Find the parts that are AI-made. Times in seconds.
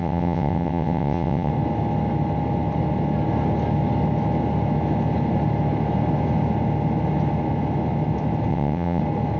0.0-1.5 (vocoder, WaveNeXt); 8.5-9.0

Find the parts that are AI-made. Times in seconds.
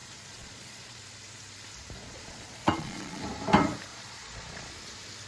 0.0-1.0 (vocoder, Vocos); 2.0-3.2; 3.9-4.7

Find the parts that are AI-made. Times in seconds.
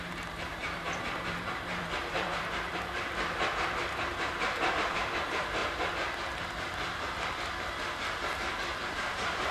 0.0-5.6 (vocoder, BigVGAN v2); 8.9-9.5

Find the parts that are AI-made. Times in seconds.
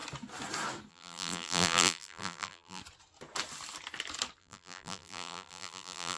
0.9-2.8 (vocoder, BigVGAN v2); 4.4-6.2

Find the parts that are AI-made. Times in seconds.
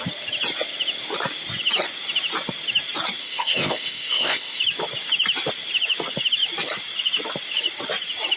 3.2-4.6 (codec, ZipCodec)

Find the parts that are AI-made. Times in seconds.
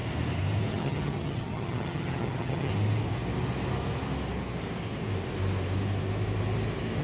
0.7-2.7 (vocoder, HiFi-GAN)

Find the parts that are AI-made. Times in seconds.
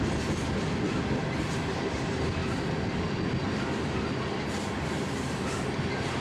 none